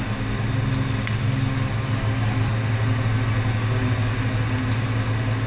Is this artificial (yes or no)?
no